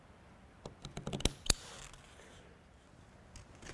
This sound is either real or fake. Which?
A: real